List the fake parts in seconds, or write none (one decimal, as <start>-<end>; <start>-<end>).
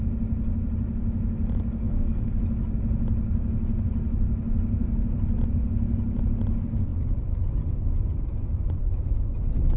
1.8-2.4